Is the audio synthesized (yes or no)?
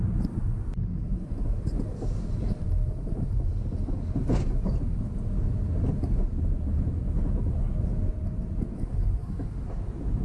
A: no